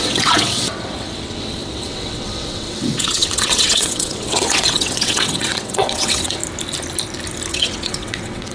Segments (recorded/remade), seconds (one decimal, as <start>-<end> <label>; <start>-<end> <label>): 0.0-6.4 remade; 6.4-7.5 recorded; 7.5-8.5 remade